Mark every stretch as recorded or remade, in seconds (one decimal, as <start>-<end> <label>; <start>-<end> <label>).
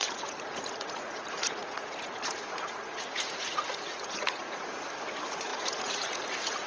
0.0-6.7 remade